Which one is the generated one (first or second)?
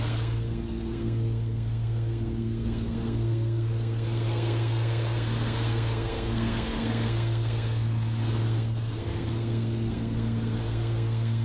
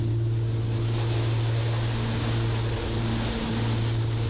first